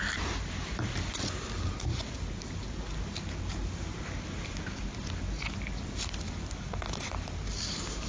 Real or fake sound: real